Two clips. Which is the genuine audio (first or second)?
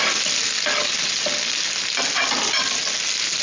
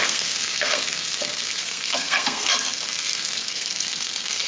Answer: first